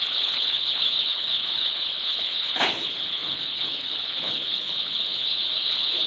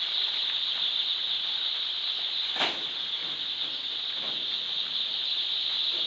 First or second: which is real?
second